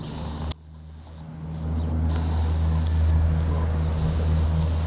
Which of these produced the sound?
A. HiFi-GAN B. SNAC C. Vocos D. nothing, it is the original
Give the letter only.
D